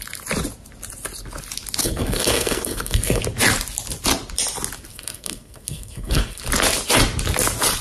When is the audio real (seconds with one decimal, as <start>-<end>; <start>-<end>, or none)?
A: 0.0-1.8; 3.2-4.9; 6.4-7.8